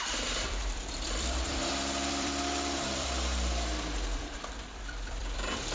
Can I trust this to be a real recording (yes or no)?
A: no